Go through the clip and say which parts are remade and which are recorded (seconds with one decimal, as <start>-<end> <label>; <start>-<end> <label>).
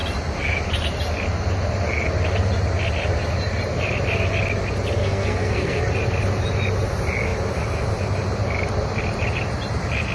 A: 0.0-5.0 recorded; 5.0-5.8 remade; 5.8-10.1 recorded